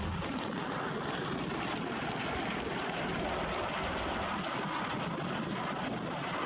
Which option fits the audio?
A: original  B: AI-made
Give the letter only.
A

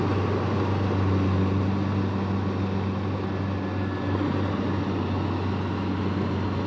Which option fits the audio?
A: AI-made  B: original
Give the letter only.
B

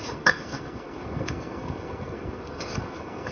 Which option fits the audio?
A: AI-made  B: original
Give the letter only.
A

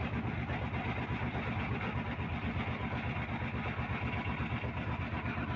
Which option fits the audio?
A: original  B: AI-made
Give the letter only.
A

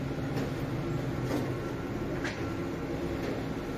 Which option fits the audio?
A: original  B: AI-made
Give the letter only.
A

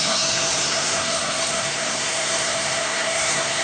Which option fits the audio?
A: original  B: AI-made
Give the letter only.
B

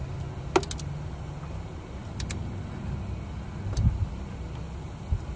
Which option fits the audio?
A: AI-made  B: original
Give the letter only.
B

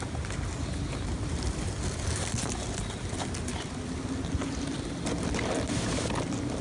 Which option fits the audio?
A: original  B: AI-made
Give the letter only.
A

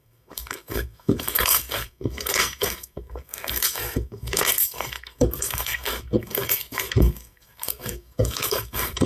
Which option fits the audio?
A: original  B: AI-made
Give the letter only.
B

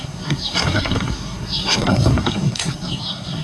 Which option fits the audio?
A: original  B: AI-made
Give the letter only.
B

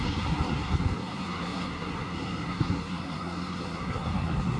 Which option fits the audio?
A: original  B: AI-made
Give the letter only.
B